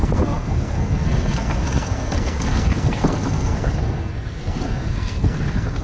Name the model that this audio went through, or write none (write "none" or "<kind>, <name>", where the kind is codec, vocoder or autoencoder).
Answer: codec, SNAC